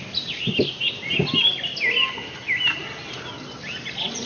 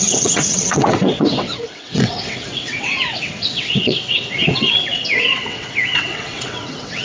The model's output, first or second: second